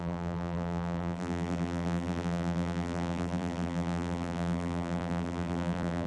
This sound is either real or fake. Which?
fake